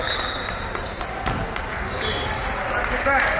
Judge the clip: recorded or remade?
recorded